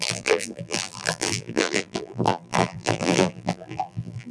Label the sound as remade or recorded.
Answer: remade